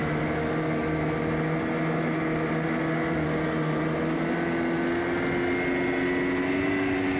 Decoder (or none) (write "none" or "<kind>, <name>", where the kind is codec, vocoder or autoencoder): none